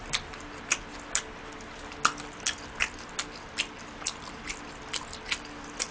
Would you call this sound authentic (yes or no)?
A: yes